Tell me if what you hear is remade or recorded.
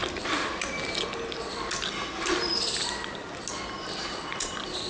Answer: recorded